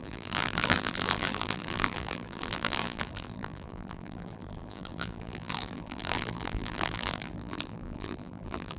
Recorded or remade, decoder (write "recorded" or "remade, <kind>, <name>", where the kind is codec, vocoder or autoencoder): remade, vocoder, BigVGAN v2